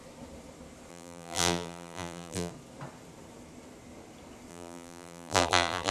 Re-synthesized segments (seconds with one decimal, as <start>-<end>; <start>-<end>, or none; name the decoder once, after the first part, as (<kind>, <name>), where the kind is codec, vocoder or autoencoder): 0.9-2.5 (vocoder, BigVGAN v2); 4.5-5.9